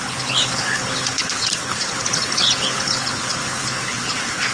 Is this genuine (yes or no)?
no